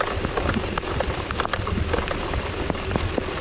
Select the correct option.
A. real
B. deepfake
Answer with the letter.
A